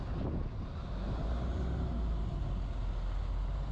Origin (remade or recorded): recorded